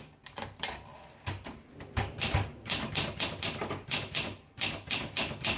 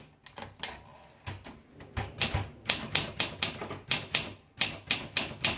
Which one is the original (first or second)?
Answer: second